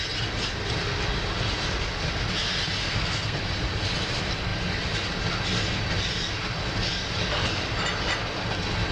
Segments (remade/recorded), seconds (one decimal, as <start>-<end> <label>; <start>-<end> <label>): 0.0-2.8 recorded; 2.8-3.4 remade; 3.4-8.9 recorded